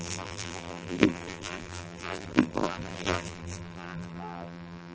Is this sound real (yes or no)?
no